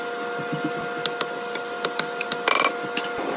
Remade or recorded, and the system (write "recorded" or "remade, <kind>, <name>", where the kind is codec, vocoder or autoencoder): recorded